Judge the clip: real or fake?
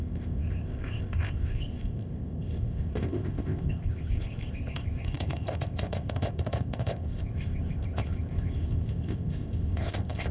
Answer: fake